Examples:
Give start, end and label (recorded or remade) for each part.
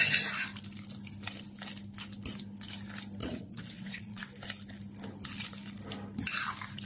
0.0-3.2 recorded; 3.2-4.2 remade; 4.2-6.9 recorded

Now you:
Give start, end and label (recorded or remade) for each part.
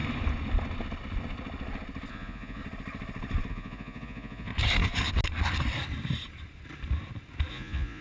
0.0-2.1 recorded; 2.1-2.6 remade; 2.6-3.5 recorded; 3.5-4.5 remade; 4.5-7.5 recorded; 7.5-8.0 remade